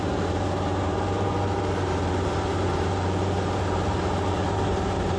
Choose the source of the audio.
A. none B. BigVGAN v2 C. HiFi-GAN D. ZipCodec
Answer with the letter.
B